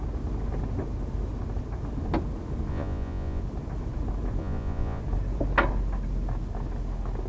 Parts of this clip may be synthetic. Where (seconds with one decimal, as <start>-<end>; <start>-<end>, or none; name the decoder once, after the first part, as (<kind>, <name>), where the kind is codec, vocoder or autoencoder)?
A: 2.7-3.4 (vocoder, Vocos); 4.4-5.0

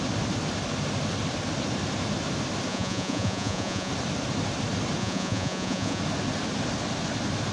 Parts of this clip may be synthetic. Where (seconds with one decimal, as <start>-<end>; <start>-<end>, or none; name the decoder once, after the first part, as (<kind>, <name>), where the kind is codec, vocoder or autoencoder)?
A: 2.7-3.9 (vocoder, Vocos); 5.0-6.0

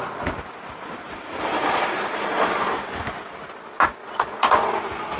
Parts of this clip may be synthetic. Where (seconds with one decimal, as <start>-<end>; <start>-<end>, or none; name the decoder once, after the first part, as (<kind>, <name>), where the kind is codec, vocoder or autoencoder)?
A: 1.5-2.7 (vocoder, Vocos); 4.0-4.7

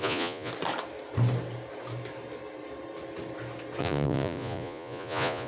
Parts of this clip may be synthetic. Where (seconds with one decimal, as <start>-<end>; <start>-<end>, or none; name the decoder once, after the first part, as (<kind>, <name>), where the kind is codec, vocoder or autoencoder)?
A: 0.0-0.5 (vocoder, Vocos); 3.8-5.5

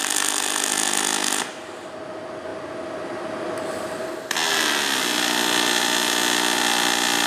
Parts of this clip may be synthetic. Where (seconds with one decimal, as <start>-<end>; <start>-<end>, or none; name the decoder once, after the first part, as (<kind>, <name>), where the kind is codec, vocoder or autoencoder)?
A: none

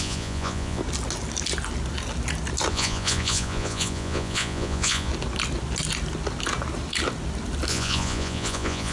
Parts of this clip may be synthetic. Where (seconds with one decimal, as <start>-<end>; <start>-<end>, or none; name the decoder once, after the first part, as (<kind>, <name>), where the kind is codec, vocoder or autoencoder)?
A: 0.0-0.8 (vocoder, Vocos); 2.7-5.1; 7.7-8.9